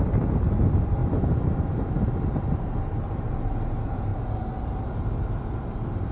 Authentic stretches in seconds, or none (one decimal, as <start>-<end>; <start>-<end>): 0.0-6.1